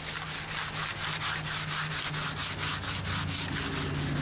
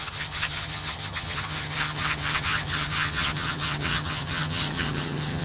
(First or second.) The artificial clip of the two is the second